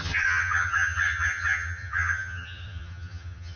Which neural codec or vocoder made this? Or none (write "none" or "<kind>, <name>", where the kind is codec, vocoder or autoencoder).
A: vocoder, HiFi-GAN